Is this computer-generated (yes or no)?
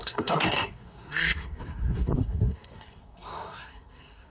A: yes